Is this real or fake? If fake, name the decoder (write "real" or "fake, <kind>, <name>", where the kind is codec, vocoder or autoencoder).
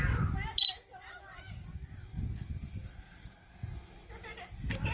real